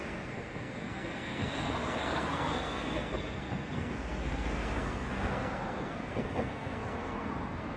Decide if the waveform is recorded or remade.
remade